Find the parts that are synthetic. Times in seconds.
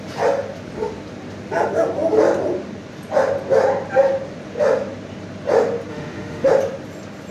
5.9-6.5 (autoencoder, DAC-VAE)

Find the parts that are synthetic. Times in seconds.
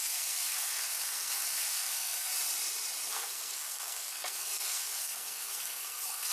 0.0-2.3 (codec, SNAC); 3.1-6.3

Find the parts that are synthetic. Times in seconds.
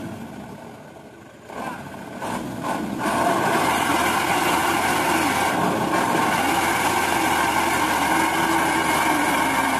none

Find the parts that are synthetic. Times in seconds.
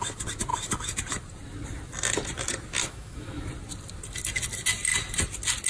2.8-3.4 (autoencoder, DAC-VAE)